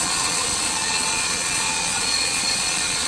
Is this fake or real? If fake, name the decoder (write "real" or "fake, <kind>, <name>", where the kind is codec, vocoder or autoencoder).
fake, vocoder, Vocos